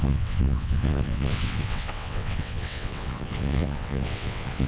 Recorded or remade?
remade